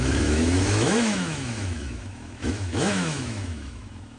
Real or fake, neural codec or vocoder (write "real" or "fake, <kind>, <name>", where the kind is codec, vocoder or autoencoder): fake, autoencoder, DAC-VAE